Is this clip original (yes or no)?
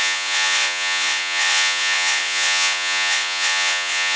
no